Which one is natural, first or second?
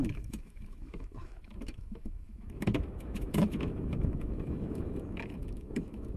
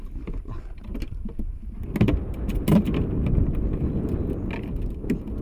second